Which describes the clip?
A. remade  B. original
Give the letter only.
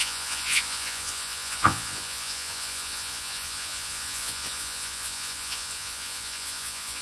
A